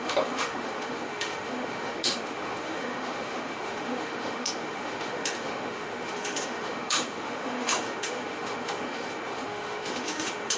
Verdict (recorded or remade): remade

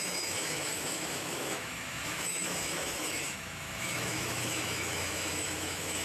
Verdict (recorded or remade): remade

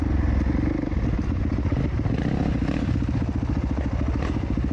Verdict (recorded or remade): recorded